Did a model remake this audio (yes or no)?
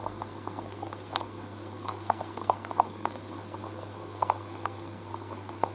yes